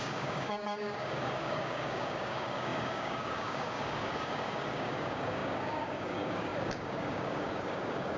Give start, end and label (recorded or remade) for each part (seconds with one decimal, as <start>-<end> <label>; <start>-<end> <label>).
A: 0.0-8.2 remade